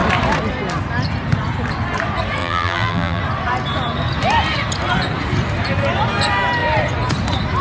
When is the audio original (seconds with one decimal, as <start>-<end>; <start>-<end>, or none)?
0.0-2.4; 3.2-7.6